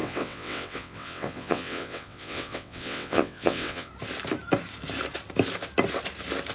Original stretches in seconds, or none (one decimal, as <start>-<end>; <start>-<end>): 3.9-6.5